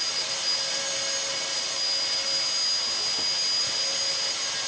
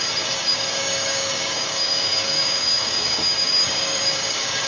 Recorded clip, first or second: first